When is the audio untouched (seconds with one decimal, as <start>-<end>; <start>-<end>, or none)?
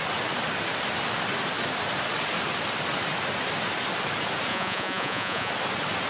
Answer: 0.0-4.5; 5.5-6.1